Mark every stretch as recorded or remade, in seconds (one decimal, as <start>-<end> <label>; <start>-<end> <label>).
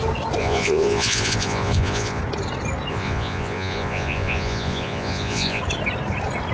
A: 0.0-0.4 recorded; 0.4-2.2 remade; 2.2-2.9 recorded; 2.9-5.6 remade; 5.6-6.5 recorded